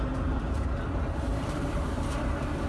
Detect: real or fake real